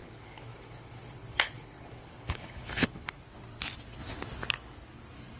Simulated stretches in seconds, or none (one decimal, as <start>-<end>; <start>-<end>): 0.0-3.2

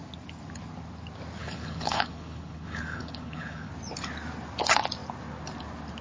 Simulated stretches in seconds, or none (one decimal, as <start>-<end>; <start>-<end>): 1.4-3.7

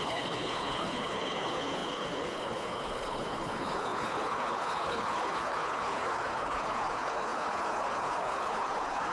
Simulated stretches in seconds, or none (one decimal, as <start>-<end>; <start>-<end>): 0.0-9.1

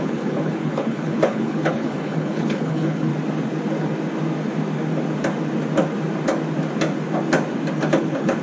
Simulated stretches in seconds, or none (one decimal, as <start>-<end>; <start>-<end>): 0.0-3.1; 8.0-8.4

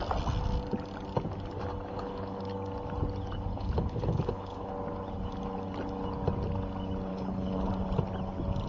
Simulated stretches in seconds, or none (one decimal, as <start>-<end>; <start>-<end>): 1.9-2.4; 3.5-4.7; 7.1-7.7